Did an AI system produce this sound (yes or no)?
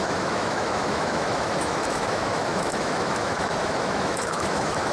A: yes